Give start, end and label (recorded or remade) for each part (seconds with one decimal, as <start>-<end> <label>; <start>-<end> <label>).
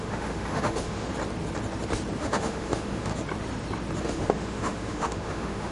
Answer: 0.0-1.1 remade; 1.1-2.2 recorded; 2.2-3.1 remade; 3.1-4.0 recorded; 4.0-5.7 remade